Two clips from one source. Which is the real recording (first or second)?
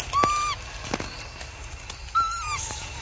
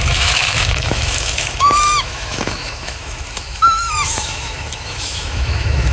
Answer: first